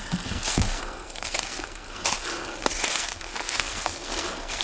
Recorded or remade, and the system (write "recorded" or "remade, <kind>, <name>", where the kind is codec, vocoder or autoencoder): remade, codec, SNAC